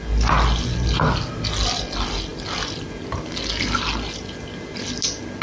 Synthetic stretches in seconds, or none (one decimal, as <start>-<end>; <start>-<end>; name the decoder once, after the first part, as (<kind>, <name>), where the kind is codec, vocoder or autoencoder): none